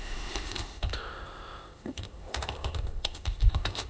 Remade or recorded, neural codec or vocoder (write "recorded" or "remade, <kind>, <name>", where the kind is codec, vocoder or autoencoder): remade, codec, ZipCodec